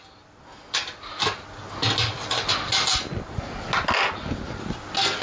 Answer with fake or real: real